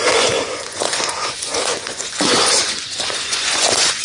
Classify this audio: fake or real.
fake